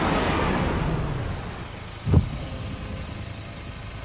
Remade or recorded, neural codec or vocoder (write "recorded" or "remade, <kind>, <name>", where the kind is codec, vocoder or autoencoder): recorded